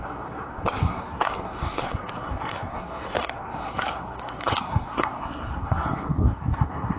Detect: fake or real fake